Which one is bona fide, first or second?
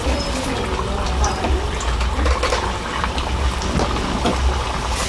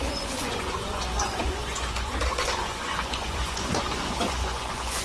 first